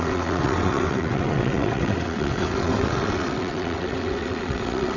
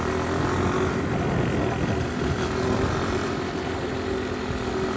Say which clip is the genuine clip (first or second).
second